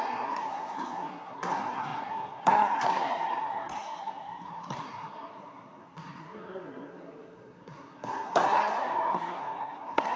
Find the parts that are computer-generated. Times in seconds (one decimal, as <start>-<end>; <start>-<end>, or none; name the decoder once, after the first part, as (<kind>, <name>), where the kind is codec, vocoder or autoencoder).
0.0-10.2 (codec, SNAC)